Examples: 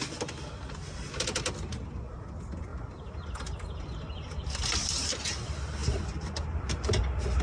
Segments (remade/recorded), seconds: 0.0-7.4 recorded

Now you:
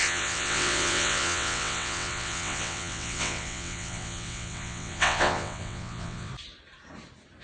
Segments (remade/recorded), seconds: 0.0-6.3 remade; 6.3-7.4 recorded

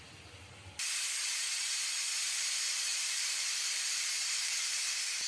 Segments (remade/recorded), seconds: 0.0-2.9 recorded; 2.9-4.7 remade; 4.7-5.3 recorded

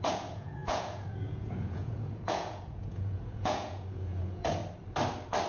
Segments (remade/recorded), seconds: 0.0-4.6 remade; 4.6-5.5 recorded

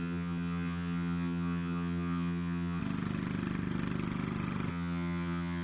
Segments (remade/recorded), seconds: 0.0-2.8 remade; 2.8-4.7 recorded; 4.7-5.6 remade

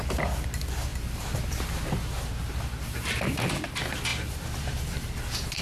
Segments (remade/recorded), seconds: 0.0-0.9 recorded; 0.9-3.3 remade; 3.3-4.1 recorded; 4.1-5.6 remade

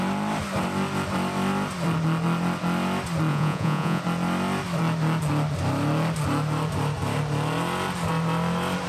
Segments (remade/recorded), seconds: 0.0-3.3 recorded; 3.3-4.0 remade; 4.0-8.9 recorded